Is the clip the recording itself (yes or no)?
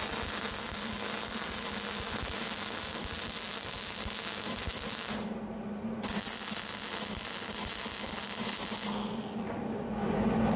yes